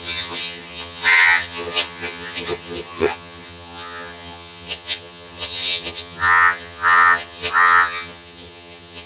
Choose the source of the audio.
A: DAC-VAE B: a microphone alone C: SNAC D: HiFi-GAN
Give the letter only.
D